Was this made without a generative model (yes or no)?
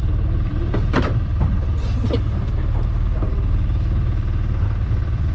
no